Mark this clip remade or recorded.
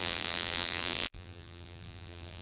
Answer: remade